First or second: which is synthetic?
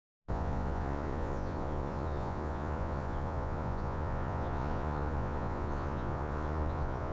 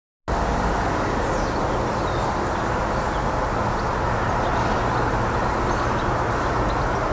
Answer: first